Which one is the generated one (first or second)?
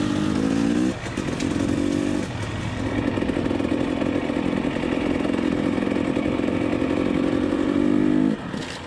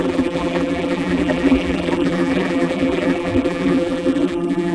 second